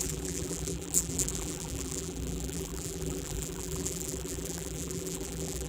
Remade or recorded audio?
remade